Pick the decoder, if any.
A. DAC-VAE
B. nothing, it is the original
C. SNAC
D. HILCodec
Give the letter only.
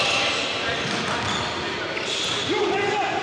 B